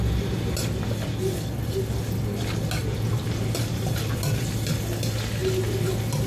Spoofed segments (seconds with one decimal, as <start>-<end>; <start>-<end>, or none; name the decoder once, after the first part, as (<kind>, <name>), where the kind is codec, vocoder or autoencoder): 2.8-4.8 (vocoder, BigVGAN v2)